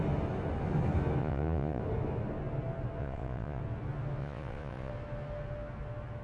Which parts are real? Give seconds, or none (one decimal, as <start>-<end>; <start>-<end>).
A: 0.0-1.2; 1.8-3.0; 3.6-4.2; 4.9-6.2